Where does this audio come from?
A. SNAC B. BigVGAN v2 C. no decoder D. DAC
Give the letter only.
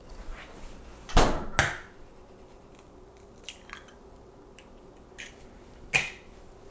C